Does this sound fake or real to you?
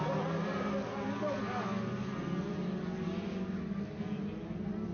real